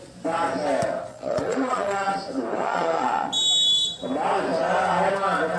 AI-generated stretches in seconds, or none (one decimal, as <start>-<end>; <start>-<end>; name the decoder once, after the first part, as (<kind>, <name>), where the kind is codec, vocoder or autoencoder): 1.1-2.1 (vocoder, Vocos); 2.5-3.3

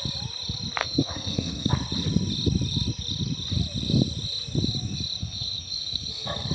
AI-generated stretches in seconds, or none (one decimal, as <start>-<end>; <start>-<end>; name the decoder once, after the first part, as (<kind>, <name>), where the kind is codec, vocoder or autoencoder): 0.8-1.7 (codec, SNAC); 5.2-6.5

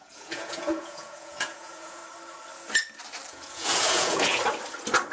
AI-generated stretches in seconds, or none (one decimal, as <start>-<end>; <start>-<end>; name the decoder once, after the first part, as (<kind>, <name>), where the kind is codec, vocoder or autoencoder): 0.0-2.0 (vocoder, Vocos); 3.3-4.4

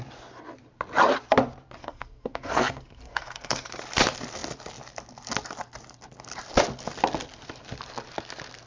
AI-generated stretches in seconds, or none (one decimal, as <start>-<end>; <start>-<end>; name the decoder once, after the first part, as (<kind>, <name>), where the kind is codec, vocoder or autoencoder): 1.8-3.7 (codec, SNAC)

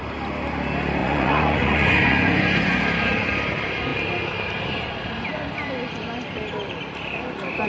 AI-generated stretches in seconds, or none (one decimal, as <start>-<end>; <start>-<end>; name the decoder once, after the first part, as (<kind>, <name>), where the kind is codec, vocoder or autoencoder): 1.0-2.8 (vocoder, Vocos)

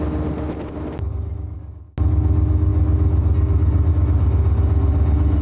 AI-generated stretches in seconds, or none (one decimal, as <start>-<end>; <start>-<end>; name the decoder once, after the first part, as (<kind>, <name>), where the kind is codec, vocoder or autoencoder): none